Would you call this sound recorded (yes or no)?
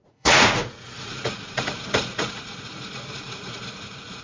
no